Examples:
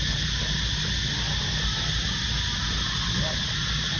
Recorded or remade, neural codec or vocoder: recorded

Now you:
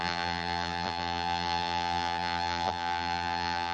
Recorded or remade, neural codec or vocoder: remade, vocoder, BigVGAN v2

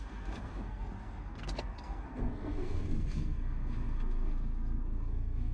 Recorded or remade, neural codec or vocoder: remade, codec, SNAC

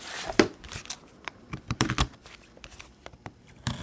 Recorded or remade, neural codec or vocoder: remade, vocoder, BigVGAN v2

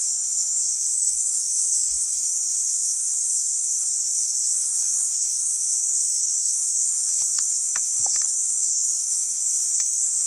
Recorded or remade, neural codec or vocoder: remade, codec, DAC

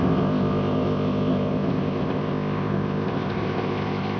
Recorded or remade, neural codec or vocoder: remade, codec, ZipCodec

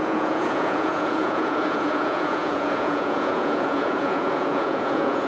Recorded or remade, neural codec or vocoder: remade, vocoder, Vocos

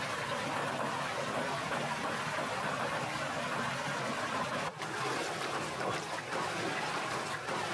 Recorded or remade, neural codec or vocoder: recorded